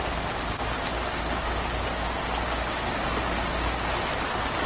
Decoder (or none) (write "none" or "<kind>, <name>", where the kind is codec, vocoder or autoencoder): none